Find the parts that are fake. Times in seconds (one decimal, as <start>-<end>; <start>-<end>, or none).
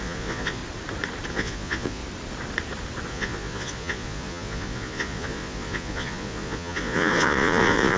0.0-0.6; 1.3-2.0; 3.1-8.0